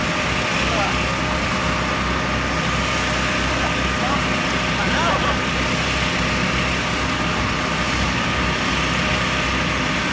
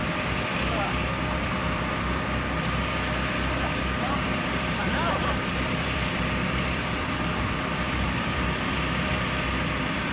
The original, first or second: first